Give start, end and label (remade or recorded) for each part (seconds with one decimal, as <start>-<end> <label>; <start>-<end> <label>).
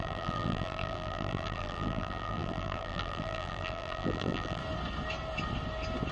0.0-4.6 remade; 4.6-6.1 recorded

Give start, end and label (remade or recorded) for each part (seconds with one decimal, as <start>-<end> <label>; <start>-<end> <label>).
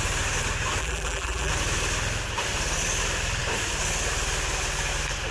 0.0-0.8 recorded; 0.8-1.5 remade; 1.5-5.3 recorded